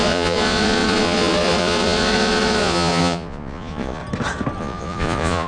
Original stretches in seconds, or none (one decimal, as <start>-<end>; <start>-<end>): 4.0-4.6